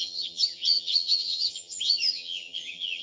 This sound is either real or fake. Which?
fake